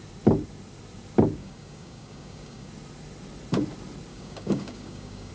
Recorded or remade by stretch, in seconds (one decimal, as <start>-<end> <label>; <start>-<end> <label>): 0.0-1.4 recorded; 1.4-2.7 remade; 2.7-4.1 recorded; 4.1-5.3 remade